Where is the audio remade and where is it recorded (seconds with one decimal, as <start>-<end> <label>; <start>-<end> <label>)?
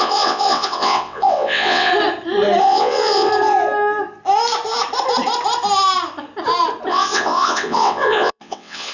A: 0.0-1.9 remade; 1.9-2.6 recorded; 2.6-3.3 remade; 3.3-6.9 recorded; 6.9-8.9 remade